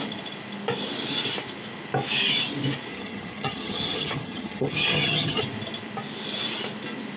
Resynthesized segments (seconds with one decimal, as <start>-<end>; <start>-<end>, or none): 2.9-5.4